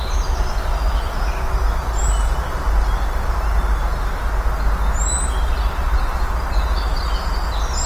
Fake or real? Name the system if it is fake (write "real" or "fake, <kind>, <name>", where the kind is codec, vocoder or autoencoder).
real